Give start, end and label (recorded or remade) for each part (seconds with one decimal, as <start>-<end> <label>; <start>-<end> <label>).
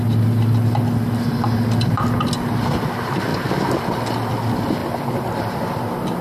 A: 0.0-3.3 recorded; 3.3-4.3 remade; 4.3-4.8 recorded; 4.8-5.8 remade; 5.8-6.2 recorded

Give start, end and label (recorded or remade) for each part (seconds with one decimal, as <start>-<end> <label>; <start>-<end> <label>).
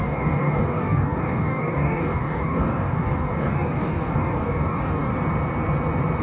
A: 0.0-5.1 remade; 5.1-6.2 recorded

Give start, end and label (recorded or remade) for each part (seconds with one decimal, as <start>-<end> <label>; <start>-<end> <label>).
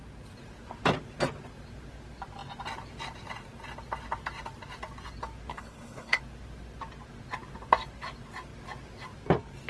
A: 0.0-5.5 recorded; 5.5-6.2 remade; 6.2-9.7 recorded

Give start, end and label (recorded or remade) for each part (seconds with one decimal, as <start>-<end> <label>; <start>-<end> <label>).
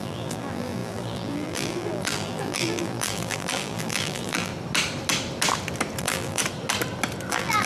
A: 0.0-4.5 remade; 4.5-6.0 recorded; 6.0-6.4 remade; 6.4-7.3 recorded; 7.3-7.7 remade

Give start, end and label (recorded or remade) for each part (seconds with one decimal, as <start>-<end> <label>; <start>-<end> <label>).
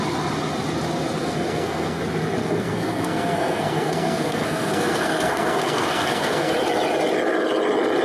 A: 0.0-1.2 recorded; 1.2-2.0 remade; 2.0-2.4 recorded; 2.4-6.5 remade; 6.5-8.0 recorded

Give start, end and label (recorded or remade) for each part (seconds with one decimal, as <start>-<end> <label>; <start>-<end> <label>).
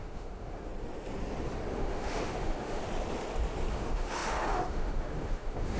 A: 0.0-0.7 remade; 0.7-1.7 recorded; 1.7-2.8 remade; 2.8-3.7 recorded; 3.7-5.8 remade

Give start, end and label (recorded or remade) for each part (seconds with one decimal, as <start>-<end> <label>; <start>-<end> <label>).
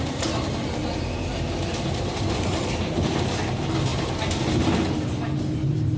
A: 0.0-6.0 recorded